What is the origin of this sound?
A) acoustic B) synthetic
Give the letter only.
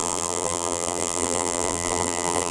B